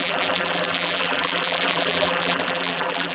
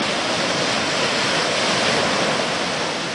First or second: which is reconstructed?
first